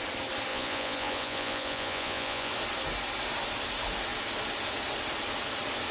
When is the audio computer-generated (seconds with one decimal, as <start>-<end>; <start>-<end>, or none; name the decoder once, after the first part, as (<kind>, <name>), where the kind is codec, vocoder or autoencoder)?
0.5-2.5 (vocoder, Vocos)